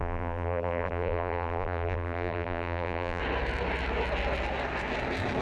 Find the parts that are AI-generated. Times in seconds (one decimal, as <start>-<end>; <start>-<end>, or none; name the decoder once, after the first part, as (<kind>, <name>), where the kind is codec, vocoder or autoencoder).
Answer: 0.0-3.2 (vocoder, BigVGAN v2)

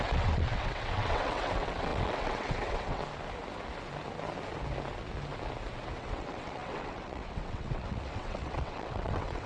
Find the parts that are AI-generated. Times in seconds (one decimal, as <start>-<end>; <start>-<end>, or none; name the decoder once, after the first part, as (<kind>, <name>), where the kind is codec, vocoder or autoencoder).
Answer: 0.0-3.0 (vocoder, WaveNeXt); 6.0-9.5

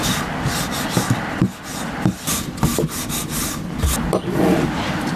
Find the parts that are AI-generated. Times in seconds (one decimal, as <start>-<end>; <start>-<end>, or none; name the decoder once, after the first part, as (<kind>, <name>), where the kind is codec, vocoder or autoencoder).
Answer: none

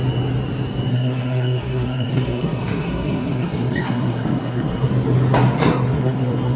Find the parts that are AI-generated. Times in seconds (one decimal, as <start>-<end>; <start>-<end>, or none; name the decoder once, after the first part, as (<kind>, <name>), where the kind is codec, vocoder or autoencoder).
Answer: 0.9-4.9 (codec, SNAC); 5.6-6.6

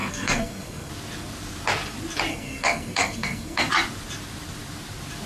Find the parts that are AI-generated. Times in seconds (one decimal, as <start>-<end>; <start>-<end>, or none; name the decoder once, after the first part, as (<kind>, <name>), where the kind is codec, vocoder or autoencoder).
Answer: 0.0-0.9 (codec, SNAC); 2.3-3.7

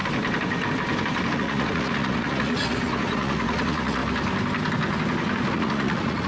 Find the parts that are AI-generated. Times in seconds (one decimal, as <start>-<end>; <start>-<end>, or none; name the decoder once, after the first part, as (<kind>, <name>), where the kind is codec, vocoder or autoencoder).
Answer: 1.3-4.0 (vocoder, Vocos); 5.5-6.3